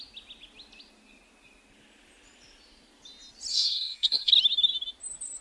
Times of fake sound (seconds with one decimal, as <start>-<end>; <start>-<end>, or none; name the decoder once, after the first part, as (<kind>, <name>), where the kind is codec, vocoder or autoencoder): 3.5-4.3 (codec, SNAC)